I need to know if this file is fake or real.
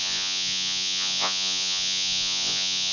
fake